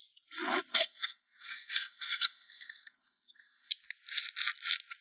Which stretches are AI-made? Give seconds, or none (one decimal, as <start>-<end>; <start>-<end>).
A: 0.7-3.7